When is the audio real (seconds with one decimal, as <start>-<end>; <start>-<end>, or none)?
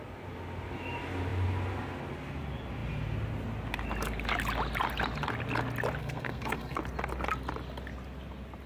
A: 0.0-6.0; 6.8-8.7